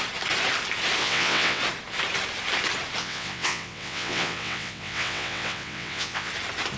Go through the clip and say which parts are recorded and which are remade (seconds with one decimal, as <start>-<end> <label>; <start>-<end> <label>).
0.0-1.0 recorded; 1.0-1.6 remade; 1.6-3.0 recorded; 3.0-6.3 remade; 6.3-6.8 recorded